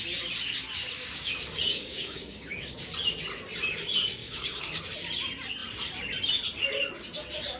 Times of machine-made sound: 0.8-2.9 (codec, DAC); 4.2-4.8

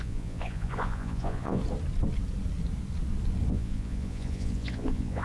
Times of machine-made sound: 0.0-1.6 (vocoder, Vocos); 3.5-5.2